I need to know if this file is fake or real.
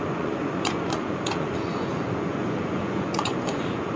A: fake